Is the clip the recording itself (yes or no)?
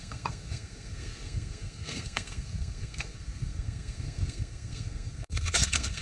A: no